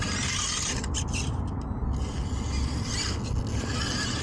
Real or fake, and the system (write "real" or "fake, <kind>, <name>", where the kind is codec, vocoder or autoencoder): real